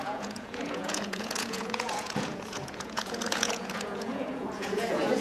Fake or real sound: fake